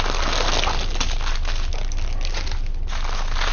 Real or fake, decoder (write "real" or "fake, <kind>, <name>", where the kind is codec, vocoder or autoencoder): real